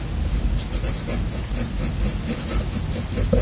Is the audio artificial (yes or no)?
no